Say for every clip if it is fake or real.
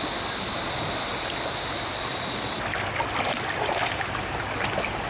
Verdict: real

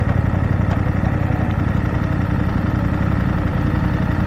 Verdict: real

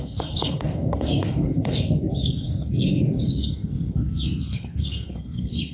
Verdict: fake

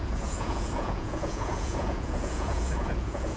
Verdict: fake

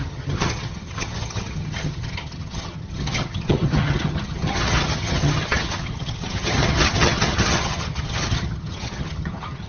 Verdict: fake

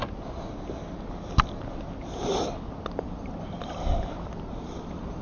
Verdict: real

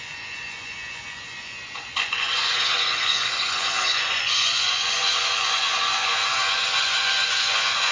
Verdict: fake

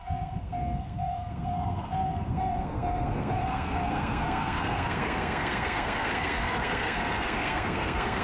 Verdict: fake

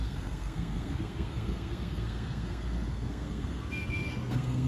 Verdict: fake